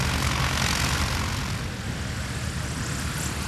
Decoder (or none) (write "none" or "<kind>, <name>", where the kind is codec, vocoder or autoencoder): none